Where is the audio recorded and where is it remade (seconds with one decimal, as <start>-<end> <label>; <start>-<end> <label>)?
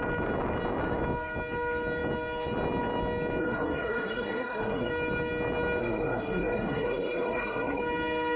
0.0-3.4 recorded; 3.4-4.9 remade; 4.9-5.8 recorded; 5.8-7.8 remade; 7.8-8.4 recorded